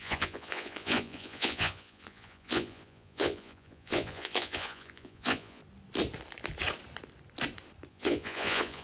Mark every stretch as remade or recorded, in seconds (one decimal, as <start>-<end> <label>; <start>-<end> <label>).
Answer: 0.0-5.6 remade; 5.6-7.9 recorded; 7.9-8.8 remade